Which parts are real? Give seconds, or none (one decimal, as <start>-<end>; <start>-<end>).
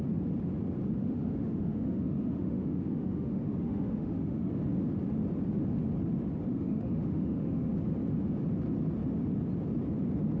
0.0-1.0; 4.5-6.5; 7.7-10.4